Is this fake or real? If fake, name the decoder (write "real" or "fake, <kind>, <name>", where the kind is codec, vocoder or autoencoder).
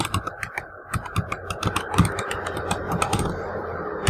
fake, vocoder, BigVGAN v2